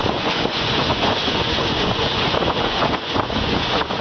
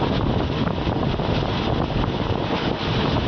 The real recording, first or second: second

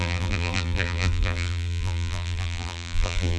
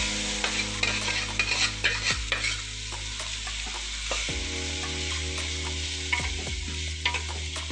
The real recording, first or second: second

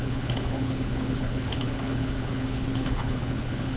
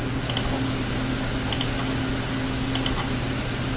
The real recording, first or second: second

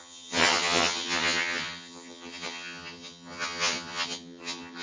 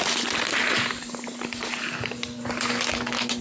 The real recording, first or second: second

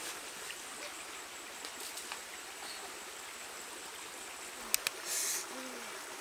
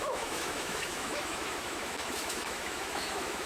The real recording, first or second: first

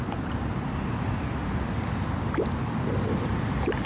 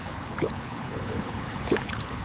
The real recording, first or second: first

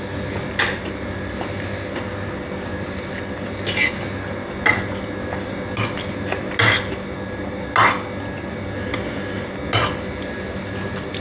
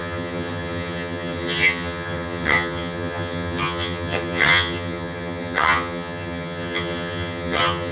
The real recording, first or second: first